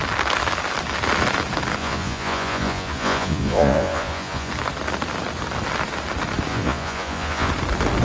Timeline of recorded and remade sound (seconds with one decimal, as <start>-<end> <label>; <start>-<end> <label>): 0.0-1.8 recorded; 1.8-4.5 remade; 4.5-6.5 recorded; 6.5-7.5 remade; 7.5-8.0 recorded